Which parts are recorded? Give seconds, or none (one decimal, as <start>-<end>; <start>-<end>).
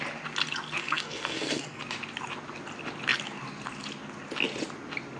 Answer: 0.0-0.8; 1.8-5.2